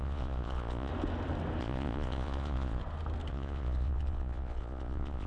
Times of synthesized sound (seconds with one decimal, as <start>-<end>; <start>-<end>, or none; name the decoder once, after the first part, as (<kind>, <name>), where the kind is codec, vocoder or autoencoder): 0.0-0.9 (vocoder, Vocos); 1.6-2.8; 3.3-5.3